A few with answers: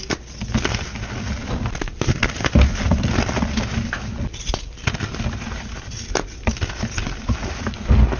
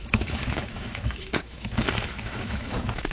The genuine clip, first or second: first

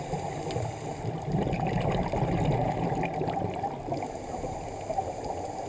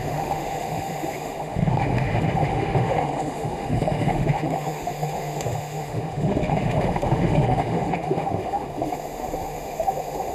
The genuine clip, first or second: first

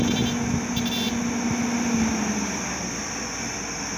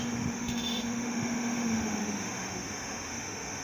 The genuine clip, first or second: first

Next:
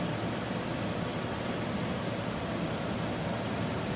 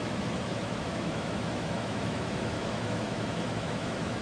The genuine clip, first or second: first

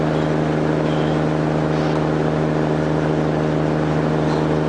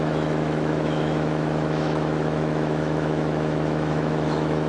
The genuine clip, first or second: first